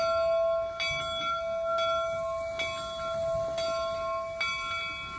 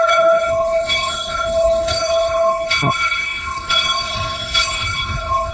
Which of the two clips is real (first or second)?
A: first